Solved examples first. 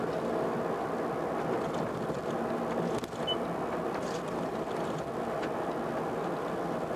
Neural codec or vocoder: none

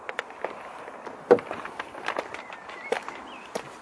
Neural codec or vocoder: none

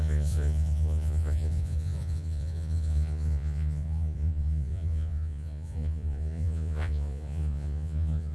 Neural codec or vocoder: vocoder, Vocos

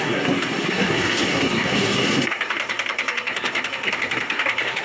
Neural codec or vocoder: codec, SNAC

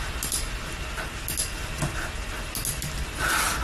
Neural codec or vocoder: none